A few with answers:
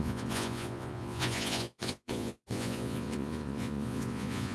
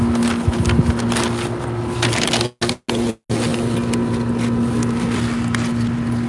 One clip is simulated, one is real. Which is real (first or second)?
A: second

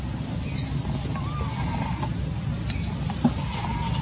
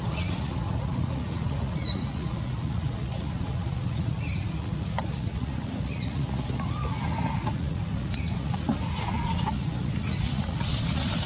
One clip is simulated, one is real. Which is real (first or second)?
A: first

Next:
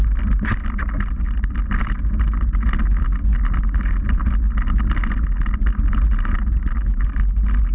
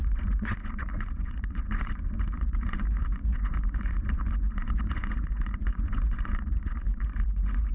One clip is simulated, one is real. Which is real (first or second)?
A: first